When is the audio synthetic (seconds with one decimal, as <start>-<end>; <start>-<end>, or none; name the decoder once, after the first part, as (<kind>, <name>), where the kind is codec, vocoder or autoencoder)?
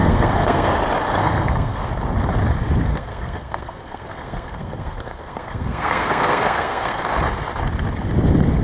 0.0-0.7 (codec, SNAC); 1.2-1.9; 2.9-7.0